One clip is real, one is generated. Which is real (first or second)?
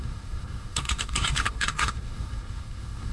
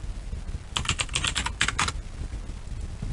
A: second